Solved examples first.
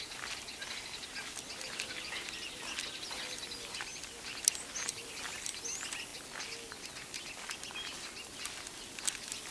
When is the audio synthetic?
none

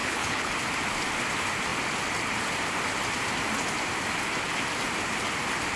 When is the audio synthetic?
0.0-0.5 (codec, HILCodec)